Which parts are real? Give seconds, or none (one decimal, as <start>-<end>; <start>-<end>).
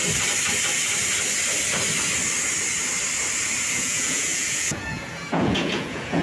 0.0-3.7